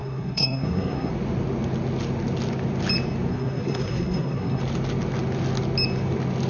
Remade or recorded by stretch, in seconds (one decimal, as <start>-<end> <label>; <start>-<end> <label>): 0.0-1.1 remade; 1.1-3.3 recorded; 3.3-4.6 remade; 4.6-6.5 recorded